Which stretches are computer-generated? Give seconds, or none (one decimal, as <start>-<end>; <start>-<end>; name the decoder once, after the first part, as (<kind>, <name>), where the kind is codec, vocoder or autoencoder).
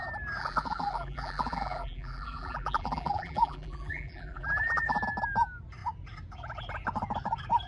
0.4-5.0 (vocoder, BigVGAN v2)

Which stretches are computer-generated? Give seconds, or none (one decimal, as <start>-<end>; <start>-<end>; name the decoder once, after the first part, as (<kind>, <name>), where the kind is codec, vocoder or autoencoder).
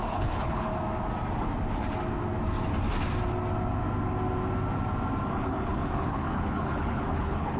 0.0-0.7 (codec, HILCodec); 5.3-7.6